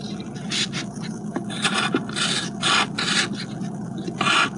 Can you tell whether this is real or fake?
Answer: real